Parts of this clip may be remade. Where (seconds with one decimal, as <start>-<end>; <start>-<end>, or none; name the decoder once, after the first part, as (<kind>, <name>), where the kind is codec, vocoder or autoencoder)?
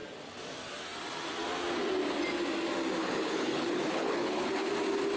3.0-4.7 (codec, HILCodec)